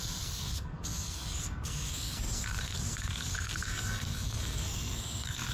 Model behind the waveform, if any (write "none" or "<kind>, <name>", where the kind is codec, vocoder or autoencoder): codec, SNAC